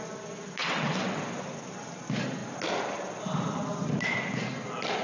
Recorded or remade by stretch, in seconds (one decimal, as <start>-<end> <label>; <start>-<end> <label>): 0.0-0.6 recorded; 0.6-1.2 remade; 1.2-5.0 recorded